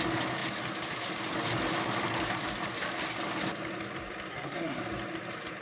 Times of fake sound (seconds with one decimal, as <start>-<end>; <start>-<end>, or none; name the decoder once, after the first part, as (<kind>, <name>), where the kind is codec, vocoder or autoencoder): 4.3-4.8 (codec, SNAC)